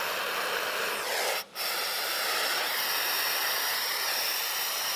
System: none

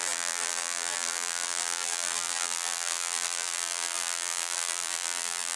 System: vocoder, BigVGAN v2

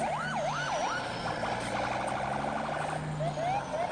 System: none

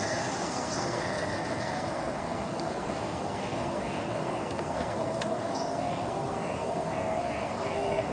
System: codec, SNAC